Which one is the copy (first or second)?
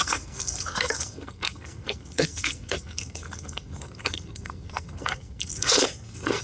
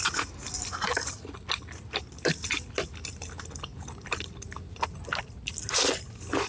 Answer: first